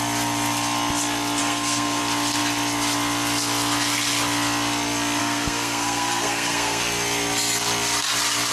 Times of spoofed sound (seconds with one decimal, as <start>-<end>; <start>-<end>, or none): 1.4-2.0; 5.2-6.8